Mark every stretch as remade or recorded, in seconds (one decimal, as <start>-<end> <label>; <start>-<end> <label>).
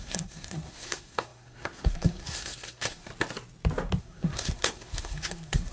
0.0-3.1 remade; 3.1-4.0 recorded; 4.0-5.7 remade